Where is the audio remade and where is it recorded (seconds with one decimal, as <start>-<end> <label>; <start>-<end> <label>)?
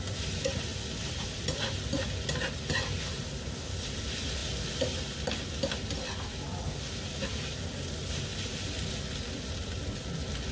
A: 0.0-10.5 recorded